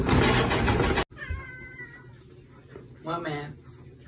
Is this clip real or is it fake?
real